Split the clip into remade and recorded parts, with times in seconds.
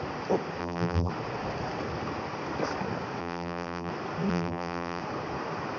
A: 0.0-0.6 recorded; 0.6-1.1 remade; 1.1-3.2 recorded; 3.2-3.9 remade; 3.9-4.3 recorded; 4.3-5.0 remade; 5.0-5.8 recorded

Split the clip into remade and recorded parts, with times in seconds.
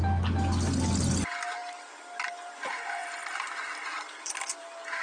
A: 0.0-5.0 recorded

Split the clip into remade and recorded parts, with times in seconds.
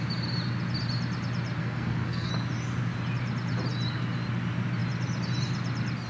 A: 0.0-1.6 recorded; 1.6-2.3 remade; 2.3-6.1 recorded